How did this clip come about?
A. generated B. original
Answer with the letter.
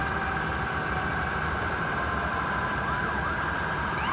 B